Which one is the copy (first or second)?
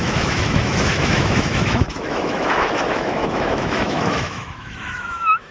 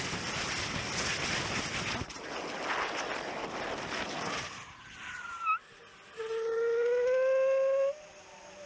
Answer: first